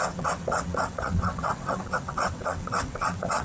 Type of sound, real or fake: fake